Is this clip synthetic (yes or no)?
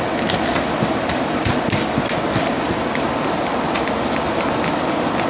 no